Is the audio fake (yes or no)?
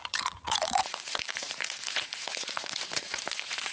yes